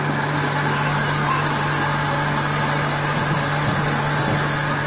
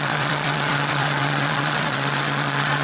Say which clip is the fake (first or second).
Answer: second